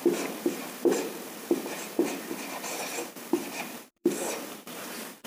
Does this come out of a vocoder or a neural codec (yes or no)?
yes